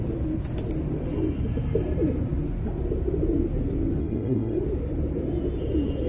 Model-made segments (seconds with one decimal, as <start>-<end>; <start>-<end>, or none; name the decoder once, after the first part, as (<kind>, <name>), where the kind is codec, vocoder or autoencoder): 4.0-4.6 (codec, SNAC)